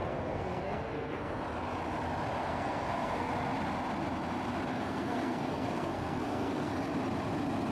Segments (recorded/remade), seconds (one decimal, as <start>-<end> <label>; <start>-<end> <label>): 0.0-1.4 remade; 1.4-2.4 recorded; 2.4-3.3 remade; 3.3-4.7 recorded; 4.7-6.7 remade; 6.7-7.7 recorded